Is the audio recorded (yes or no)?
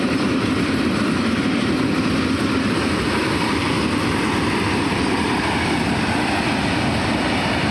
no